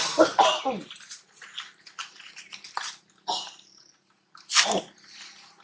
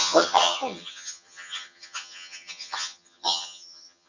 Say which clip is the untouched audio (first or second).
first